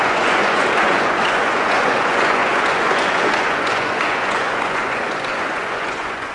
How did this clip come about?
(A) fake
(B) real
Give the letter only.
A